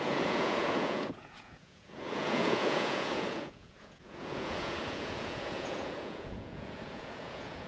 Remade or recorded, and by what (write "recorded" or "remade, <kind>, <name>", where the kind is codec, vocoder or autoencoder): remade, vocoder, Vocos